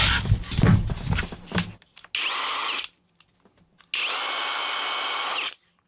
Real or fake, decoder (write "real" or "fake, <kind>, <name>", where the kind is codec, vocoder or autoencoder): real